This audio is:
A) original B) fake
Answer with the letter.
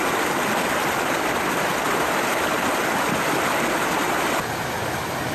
A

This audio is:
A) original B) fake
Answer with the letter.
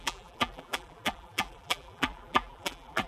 B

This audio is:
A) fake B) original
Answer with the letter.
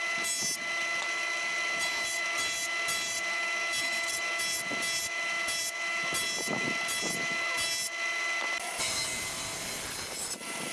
B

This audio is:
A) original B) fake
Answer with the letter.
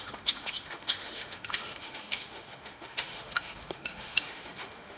B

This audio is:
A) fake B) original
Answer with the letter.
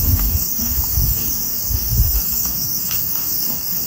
A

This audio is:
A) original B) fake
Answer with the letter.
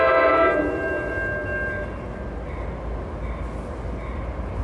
A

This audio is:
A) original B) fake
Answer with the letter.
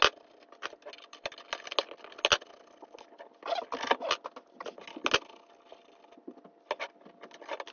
A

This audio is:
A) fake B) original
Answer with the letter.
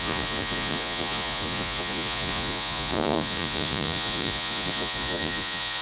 A